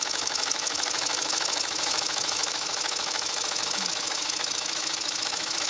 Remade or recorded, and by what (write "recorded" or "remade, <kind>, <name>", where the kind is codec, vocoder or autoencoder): remade, autoencoder, DAC-VAE